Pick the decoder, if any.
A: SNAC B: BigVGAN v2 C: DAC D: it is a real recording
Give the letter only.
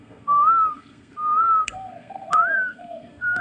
A